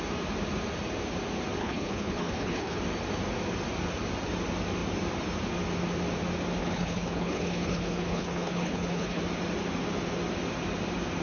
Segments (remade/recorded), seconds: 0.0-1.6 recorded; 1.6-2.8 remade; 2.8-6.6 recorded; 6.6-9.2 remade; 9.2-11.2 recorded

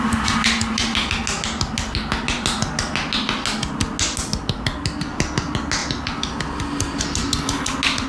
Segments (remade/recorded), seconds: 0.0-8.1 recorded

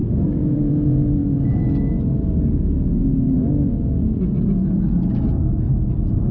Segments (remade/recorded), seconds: 0.0-0.7 remade; 0.7-6.3 recorded